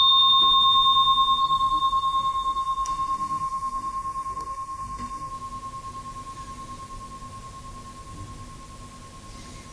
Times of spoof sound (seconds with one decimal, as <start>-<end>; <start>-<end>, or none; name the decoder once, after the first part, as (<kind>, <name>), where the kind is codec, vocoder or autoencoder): 1.4-5.3 (codec, SNAC)